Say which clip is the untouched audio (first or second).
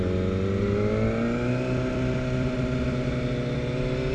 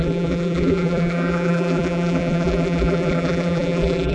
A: first